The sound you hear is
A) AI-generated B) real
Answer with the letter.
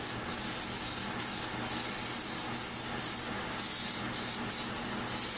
B